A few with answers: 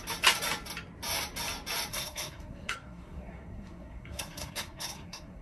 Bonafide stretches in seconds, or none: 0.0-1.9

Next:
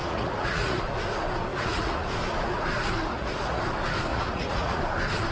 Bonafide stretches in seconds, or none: 0.8-1.5; 2.1-3.1; 3.6-4.1; 4.8-5.3

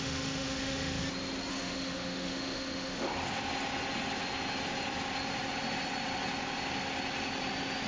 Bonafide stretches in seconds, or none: 1.0-1.5; 3.1-7.9

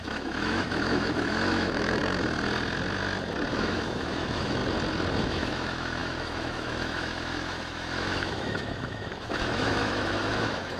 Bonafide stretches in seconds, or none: 2.0-3.5; 4.6-5.2